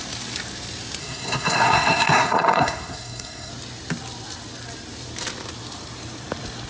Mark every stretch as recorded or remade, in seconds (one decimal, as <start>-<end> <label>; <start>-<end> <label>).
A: 0.0-1.0 recorded; 1.0-3.5 remade; 3.5-6.7 recorded